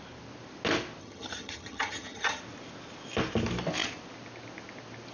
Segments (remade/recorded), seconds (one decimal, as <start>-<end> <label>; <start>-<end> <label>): 0.0-1.0 recorded; 1.0-2.4 remade; 2.4-5.1 recorded